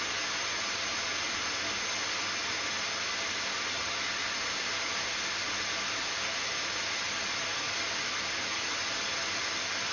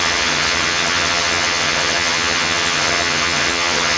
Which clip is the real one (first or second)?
first